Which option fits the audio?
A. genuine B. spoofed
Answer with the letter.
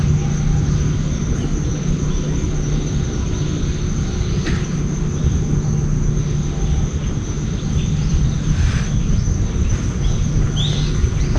A